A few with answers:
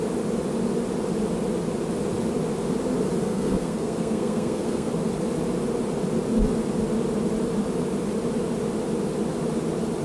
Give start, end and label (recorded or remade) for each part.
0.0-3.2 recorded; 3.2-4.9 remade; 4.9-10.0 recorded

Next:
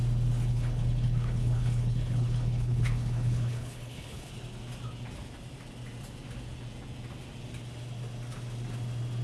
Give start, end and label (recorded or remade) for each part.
0.0-0.5 recorded; 0.5-4.3 remade; 4.3-9.2 recorded

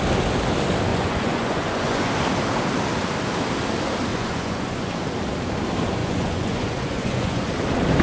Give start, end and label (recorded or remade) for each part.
0.0-0.9 recorded; 0.9-2.1 remade; 2.1-4.1 recorded; 4.1-4.9 remade; 4.9-6.0 recorded; 6.0-7.5 remade; 7.5-8.0 recorded

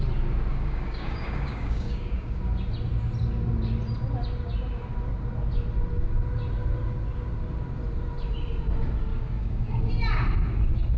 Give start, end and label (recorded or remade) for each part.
0.0-0.5 recorded; 0.5-2.4 remade; 2.4-9.1 recorded; 9.1-9.9 remade; 9.9-11.0 recorded

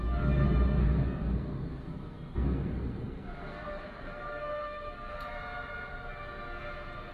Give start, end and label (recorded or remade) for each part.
0.0-0.8 recorded; 0.8-5.1 remade; 5.1-7.1 recorded

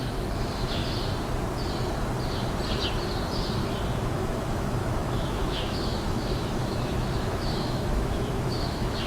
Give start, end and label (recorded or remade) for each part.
0.0-0.8 remade; 0.8-4.0 recorded; 4.0-9.1 remade

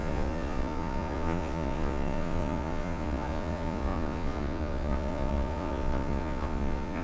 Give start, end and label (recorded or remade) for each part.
0.0-7.0 remade